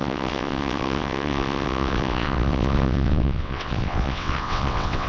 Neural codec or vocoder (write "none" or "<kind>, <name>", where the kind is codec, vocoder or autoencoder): vocoder, WaveNeXt